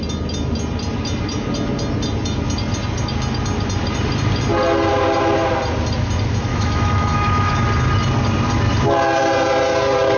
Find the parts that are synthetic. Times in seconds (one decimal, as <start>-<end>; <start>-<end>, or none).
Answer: 6.5-7.5